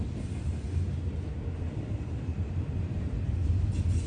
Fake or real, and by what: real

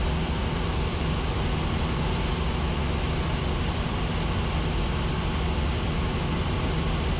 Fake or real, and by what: fake, vocoder, BigVGAN v2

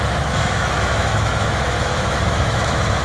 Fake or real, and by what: fake, autoencoder, DAC-VAE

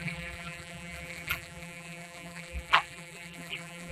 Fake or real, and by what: fake, vocoder, BigVGAN v2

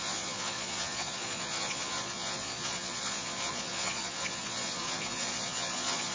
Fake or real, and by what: fake, vocoder, Vocos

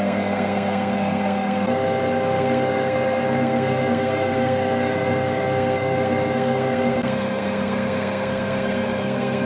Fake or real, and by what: fake, codec, SNAC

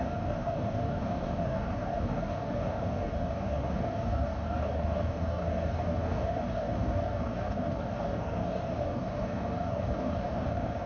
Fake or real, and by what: fake, codec, DAC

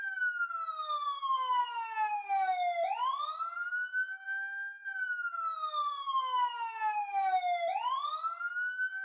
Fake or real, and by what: real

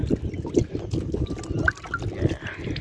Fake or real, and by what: real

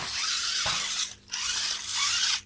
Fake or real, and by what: real